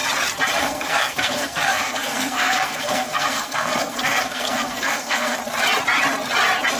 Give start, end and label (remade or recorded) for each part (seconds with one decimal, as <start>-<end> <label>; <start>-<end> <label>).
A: 0.0-0.6 recorded; 0.6-5.4 remade; 5.4-6.8 recorded